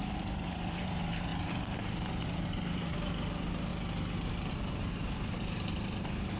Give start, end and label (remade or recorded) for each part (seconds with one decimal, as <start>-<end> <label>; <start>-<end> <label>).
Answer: 0.0-1.3 remade; 1.3-1.8 recorded; 1.8-3.7 remade; 3.7-4.5 recorded; 4.5-6.4 remade